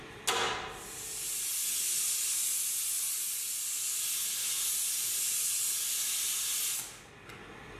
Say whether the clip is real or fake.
real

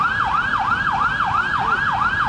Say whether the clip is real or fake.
real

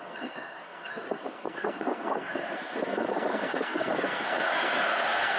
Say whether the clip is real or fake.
fake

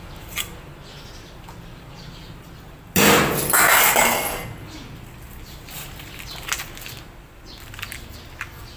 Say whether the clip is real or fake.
real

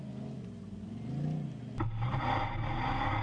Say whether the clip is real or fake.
real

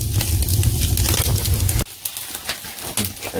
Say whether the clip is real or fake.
real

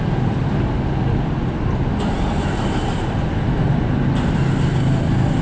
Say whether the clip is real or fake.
real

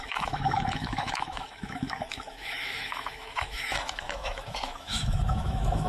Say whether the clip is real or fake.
fake